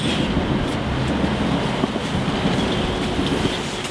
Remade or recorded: recorded